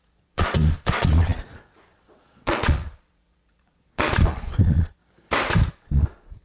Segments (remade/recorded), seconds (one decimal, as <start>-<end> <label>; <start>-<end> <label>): 0.0-5.0 remade; 5.0-5.7 recorded; 5.7-6.4 remade